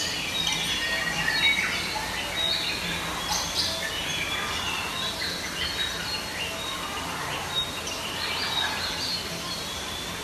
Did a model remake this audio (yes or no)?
no